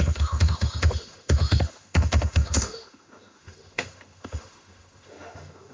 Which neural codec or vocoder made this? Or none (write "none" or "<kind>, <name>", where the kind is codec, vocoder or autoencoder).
autoencoder, DAC-VAE